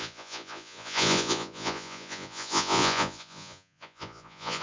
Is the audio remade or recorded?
remade